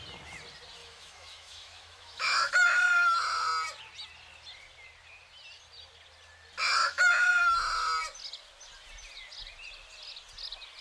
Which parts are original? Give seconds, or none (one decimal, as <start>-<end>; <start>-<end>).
0.0-0.8; 2.5-6.8; 7.4-10.8